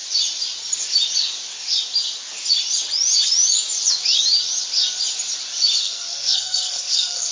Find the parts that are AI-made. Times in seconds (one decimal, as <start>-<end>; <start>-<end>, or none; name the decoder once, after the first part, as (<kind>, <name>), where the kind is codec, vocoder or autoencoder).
5.8-7.3 (codec, SNAC)